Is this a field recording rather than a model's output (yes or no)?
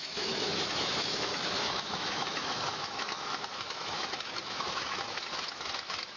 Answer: no